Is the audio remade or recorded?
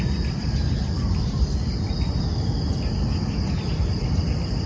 recorded